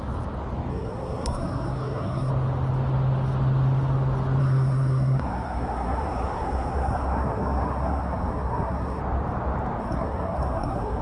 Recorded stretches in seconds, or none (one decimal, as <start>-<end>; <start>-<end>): 0.0-0.7; 2.3-4.4; 9.0-9.8